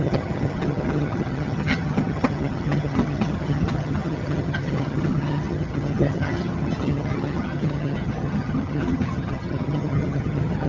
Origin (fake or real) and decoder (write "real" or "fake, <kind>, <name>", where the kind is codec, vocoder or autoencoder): fake, vocoder, HiFi-GAN